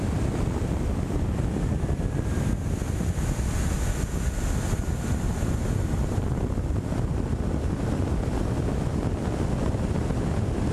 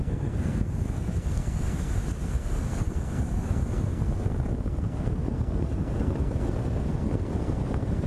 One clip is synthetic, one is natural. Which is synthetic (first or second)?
second